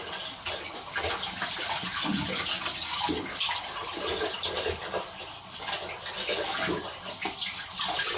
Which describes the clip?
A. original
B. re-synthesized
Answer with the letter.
A